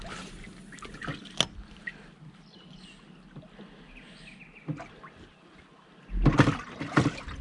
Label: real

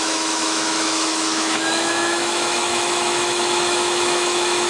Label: fake